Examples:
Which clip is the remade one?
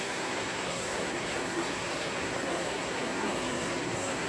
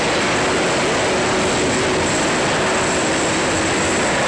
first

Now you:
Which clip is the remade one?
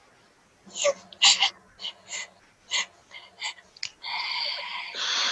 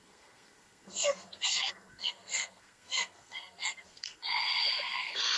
second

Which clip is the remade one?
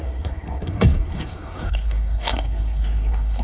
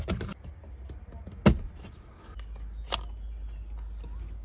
first